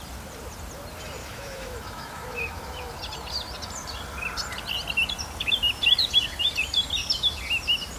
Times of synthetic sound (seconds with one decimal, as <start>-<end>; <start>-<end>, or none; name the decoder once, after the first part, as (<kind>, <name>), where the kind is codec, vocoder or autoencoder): 1.2-3.0 (autoencoder, DAC-VAE)